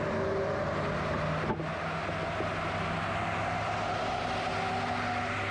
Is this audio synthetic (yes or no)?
no